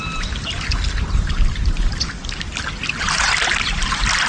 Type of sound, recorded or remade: recorded